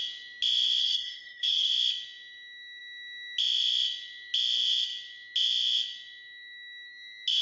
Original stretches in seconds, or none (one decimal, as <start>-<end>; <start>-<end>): 0.0-0.8; 1.7-7.4